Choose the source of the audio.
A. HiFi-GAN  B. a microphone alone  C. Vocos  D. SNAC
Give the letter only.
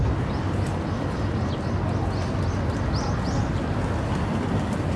B